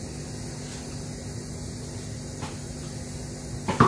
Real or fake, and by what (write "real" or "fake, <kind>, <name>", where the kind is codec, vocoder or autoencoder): real